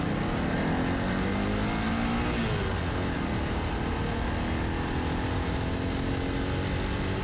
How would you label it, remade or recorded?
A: recorded